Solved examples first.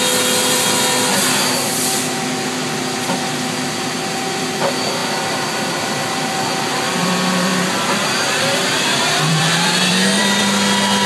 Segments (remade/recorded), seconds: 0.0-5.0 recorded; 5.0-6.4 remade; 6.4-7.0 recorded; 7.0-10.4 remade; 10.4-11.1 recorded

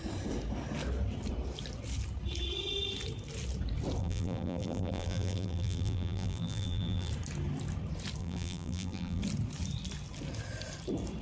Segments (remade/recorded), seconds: 0.0-4.0 recorded; 4.0-7.1 remade; 7.1-8.2 recorded; 8.2-9.2 remade; 9.2-11.2 recorded

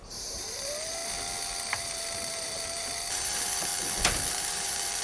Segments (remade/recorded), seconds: 0.0-1.0 remade; 1.0-1.7 recorded; 1.7-3.7 remade; 3.7-4.3 recorded; 4.3-5.0 remade

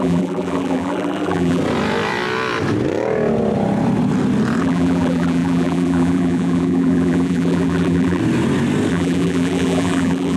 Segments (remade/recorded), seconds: 0.0-1.6 remade; 1.6-4.6 recorded; 4.6-8.2 remade; 8.2-8.9 recorded; 8.9-10.4 remade